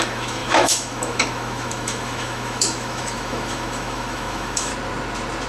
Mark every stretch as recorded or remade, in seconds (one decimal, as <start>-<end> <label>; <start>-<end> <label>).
0.0-4.7 remade; 4.7-5.5 recorded